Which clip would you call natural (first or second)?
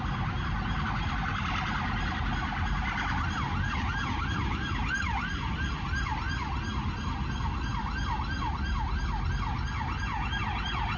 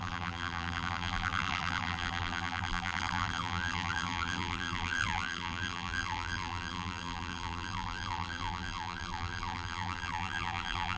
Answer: first